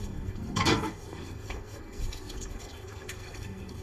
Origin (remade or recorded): remade